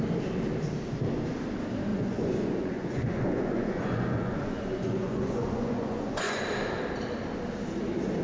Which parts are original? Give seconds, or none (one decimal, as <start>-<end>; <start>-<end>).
0.0-1.9; 6.4-8.2